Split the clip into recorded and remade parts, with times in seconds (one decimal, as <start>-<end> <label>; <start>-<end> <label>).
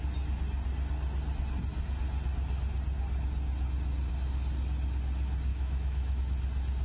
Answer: 0.0-5.5 recorded; 5.5-6.2 remade; 6.2-6.8 recorded